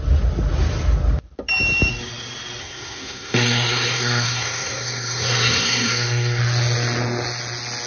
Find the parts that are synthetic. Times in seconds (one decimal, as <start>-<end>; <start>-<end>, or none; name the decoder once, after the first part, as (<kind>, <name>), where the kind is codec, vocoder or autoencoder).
2.6-6.4 (codec, SNAC)